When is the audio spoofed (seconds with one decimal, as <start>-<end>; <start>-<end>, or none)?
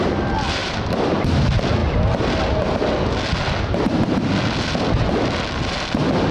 0.6-1.3